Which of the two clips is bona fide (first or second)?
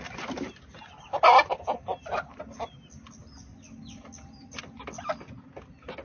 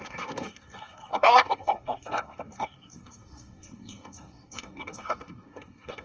first